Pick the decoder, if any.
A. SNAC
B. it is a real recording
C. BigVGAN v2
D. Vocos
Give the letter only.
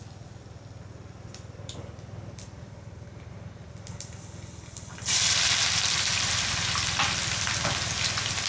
B